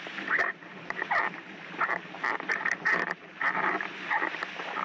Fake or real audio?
real